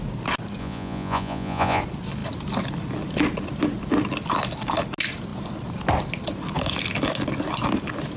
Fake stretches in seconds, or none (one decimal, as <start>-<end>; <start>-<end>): 0.6-1.8